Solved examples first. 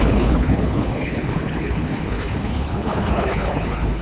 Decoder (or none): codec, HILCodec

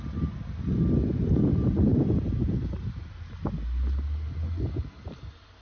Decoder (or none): none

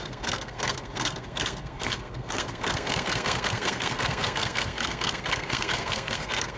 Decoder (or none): codec, SNAC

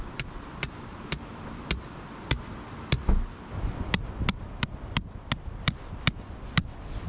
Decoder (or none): none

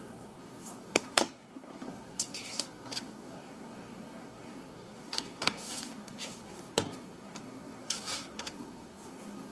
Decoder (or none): codec, SNAC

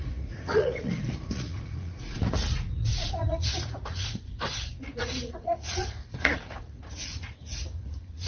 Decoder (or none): vocoder, Vocos